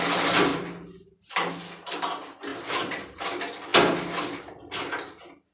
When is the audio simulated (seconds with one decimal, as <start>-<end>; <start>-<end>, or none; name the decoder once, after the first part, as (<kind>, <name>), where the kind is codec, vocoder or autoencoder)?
0.5-1.3 (vocoder, BigVGAN v2); 2.5-3.2